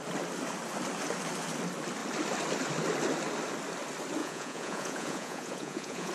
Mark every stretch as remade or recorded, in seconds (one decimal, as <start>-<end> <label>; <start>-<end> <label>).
0.0-4.2 recorded; 4.2-6.1 remade